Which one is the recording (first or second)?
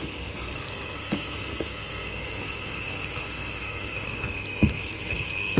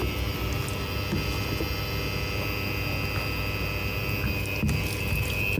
second